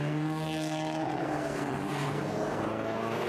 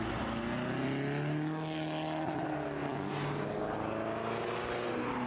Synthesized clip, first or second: first